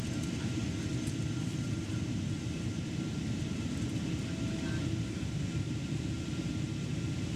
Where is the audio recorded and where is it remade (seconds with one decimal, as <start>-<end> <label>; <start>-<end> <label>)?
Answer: 0.0-7.4 recorded